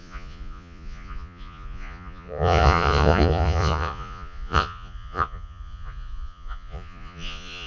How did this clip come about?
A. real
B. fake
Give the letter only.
B